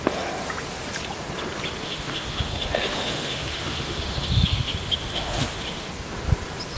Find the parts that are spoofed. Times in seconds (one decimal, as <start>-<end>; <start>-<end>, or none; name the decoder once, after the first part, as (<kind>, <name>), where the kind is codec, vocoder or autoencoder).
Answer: 1.8-5.9 (autoencoder, DAC-VAE)